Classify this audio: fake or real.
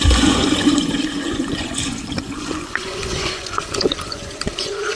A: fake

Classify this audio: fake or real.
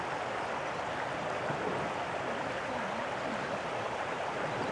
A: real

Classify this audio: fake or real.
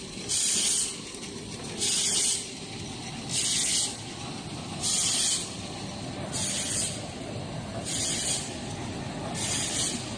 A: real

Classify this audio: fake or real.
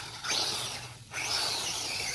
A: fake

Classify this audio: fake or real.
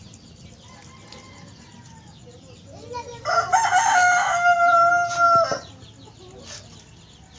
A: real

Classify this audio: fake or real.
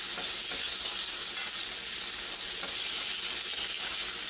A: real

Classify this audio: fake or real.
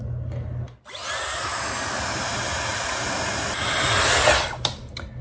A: real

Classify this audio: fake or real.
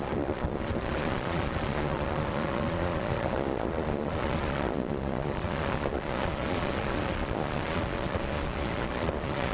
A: fake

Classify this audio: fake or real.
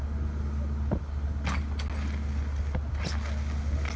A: real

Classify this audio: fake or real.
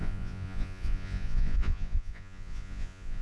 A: fake